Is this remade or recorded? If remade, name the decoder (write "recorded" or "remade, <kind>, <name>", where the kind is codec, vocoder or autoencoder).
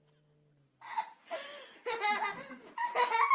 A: recorded